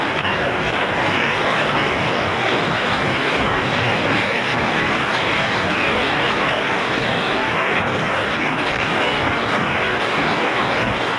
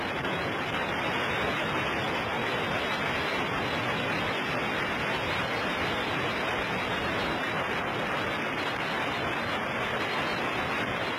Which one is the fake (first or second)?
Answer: first